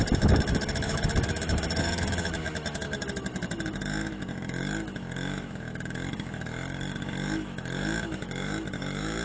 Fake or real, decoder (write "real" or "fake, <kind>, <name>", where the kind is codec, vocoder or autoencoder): fake, autoencoder, DAC-VAE